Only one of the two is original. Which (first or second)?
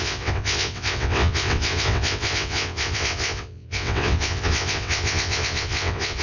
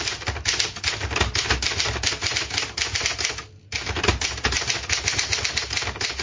second